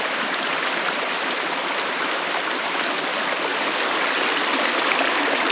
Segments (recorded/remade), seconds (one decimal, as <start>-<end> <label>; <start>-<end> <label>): 0.0-3.5 remade; 3.5-5.1 recorded; 5.1-5.5 remade